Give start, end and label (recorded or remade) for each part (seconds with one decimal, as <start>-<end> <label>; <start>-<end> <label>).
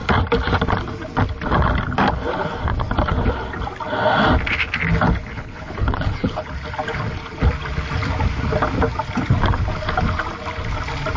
0.0-5.2 recorded; 5.2-6.5 remade; 6.5-11.2 recorded